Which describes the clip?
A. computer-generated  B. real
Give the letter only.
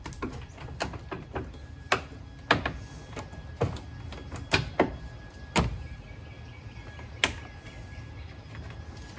B